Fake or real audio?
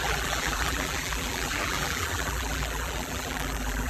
fake